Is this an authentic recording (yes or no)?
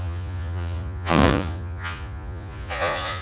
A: no